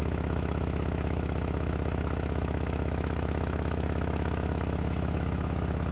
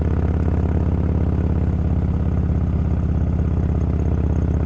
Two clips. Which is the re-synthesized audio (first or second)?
first